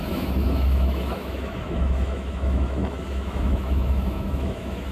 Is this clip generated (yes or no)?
yes